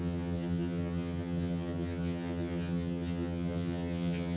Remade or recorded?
remade